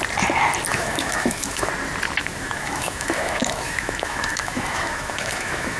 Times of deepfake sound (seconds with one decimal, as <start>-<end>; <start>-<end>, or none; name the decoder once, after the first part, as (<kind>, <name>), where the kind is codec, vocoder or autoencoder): 0.7-1.7 (autoencoder, DAC-VAE); 2.2-5.8